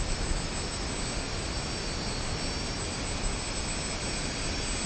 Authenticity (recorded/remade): recorded